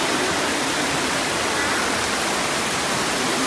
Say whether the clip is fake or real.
real